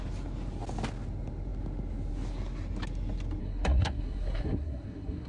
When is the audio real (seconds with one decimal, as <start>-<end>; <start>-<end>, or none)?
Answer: 0.0-3.4